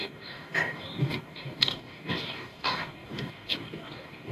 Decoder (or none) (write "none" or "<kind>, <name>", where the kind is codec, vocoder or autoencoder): codec, DAC